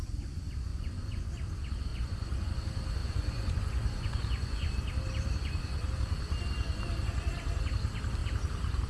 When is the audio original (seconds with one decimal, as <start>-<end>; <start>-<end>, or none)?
0.0-0.7; 1.3-1.9; 2.6-3.0; 4.7-8.9

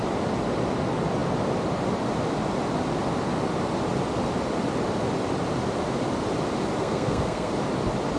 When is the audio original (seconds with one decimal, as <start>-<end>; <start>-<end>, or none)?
0.0-6.8; 7.5-8.2

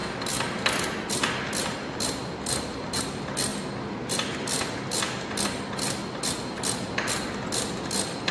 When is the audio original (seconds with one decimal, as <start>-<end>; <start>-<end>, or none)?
0.0-3.5; 4.2-8.3

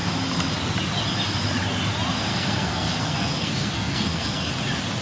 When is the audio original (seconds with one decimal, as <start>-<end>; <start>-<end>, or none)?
0.0-2.3; 4.5-5.0

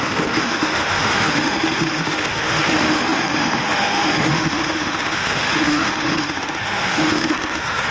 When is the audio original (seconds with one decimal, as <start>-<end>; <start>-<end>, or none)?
none

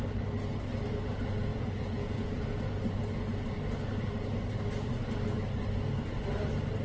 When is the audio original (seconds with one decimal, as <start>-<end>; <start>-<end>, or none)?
0.0-1.5; 2.4-6.8

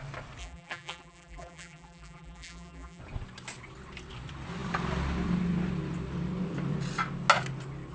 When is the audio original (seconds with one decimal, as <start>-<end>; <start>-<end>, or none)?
0.0-0.4; 3.0-7.9